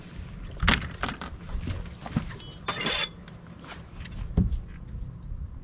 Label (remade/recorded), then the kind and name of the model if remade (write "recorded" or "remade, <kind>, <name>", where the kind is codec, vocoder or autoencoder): recorded